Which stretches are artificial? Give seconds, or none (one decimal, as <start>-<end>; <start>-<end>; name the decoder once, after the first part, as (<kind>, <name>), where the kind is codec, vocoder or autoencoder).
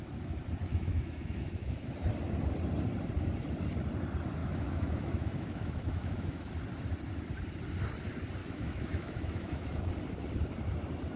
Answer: 0.7-1.9 (autoencoder, DAC-VAE); 4.4-6.5; 8.4-9.9